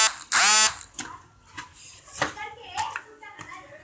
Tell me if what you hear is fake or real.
real